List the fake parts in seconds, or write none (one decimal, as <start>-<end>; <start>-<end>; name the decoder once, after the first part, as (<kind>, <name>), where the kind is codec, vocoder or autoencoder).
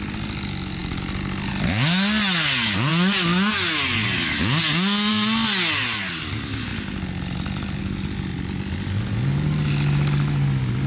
none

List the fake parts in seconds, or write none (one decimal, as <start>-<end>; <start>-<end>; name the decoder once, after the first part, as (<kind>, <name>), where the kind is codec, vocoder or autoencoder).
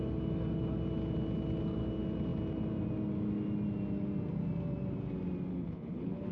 5.5-6.3 (codec, HILCodec)